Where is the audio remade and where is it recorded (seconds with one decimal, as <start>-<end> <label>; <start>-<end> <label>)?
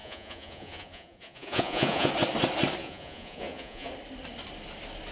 0.0-2.1 remade; 2.1-2.8 recorded; 2.8-3.9 remade; 3.9-5.1 recorded